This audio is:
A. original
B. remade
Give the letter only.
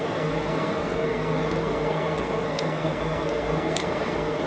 B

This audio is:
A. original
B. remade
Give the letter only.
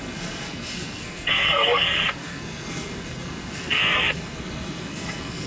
B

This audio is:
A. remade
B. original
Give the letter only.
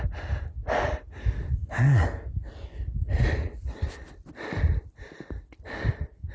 B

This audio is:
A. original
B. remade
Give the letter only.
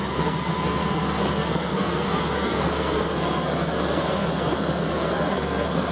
B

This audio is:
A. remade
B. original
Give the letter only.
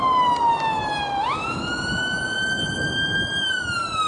B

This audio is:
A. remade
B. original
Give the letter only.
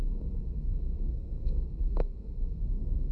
A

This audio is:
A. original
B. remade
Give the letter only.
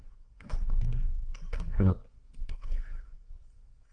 B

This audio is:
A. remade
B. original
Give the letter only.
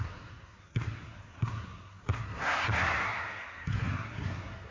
A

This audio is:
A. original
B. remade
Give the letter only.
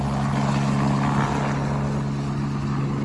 A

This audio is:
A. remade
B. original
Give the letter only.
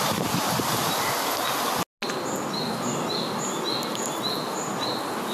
B